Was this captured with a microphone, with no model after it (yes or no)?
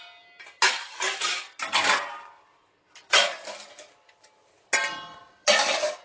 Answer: yes